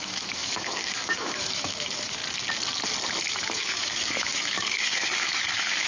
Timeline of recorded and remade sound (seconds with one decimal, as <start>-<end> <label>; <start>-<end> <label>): 0.0-2.2 remade; 2.2-3.4 recorded; 3.4-5.9 remade